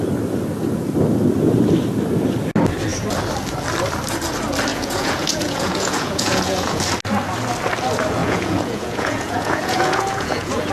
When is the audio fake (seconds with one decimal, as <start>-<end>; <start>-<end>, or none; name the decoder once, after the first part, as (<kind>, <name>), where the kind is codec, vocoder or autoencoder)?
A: 4.7-6.8 (vocoder, Vocos); 8.2-10.7